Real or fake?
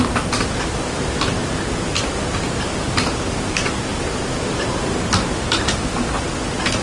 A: real